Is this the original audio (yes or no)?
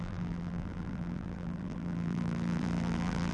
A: no